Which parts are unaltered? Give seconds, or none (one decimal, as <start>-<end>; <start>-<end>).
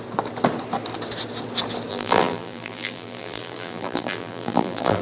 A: 0.0-1.9